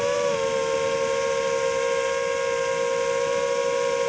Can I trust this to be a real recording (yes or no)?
yes